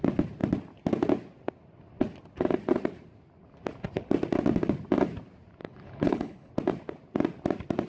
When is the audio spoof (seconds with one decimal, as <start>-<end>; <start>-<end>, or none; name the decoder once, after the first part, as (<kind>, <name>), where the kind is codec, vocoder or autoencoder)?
5.6-6.5 (codec, HILCodec)